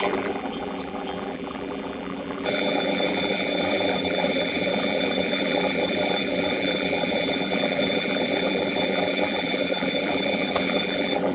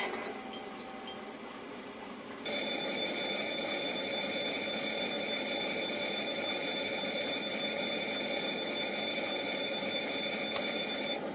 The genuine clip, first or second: second